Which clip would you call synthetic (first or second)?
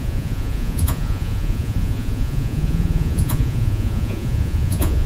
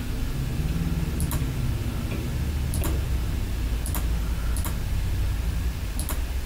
first